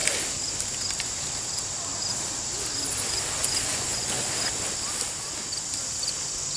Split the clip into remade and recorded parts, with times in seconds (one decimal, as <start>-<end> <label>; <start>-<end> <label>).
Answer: 0.0-3.7 recorded; 3.7-4.3 remade; 4.3-6.6 recorded